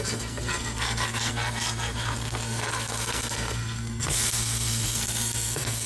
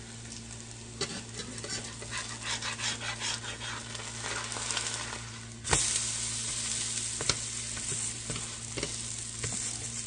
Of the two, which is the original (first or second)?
second